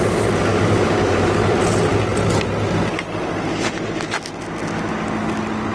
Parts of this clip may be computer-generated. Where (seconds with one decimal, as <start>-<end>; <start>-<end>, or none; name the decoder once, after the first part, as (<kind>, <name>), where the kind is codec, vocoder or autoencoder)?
0.5-1.5 (codec, DAC)